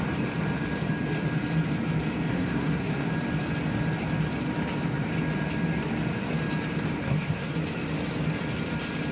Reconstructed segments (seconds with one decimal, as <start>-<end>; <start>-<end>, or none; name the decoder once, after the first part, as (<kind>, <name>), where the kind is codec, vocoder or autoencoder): 2.3-3.1 (codec, SNAC); 7.0-7.5